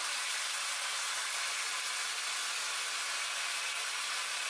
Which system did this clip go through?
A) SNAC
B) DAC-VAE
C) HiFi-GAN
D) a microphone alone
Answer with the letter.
D